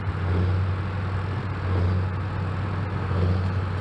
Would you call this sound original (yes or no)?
yes